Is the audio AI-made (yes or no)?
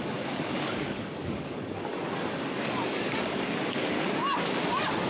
yes